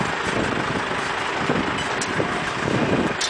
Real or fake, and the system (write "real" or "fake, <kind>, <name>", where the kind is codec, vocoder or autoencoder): real